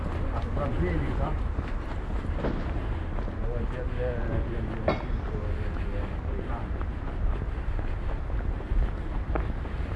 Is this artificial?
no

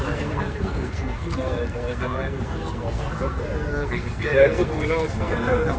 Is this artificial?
yes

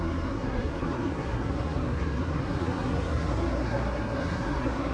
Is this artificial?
yes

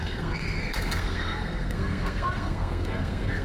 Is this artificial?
yes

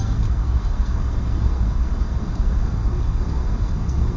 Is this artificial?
yes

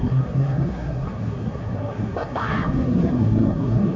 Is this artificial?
yes